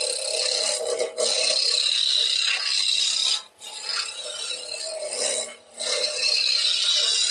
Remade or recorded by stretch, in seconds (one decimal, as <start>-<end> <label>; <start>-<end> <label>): 0.0-7.3 recorded